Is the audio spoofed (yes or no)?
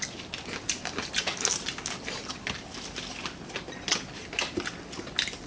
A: no